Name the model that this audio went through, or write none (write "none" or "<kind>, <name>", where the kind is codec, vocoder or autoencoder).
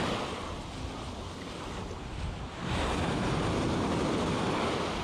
none